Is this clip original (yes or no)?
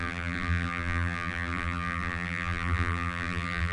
no